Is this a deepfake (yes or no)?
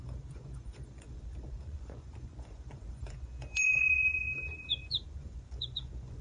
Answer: yes